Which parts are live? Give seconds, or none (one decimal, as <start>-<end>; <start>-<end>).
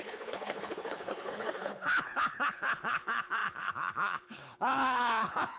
none